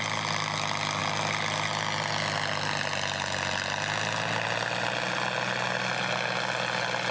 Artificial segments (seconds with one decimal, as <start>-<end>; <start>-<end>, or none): none